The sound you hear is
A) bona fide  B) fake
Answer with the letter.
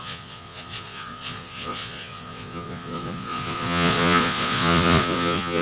B